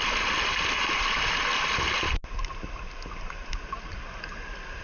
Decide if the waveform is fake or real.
real